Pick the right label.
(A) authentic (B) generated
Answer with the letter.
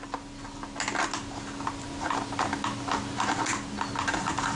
A